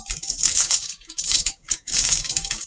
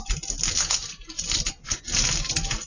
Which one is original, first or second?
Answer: second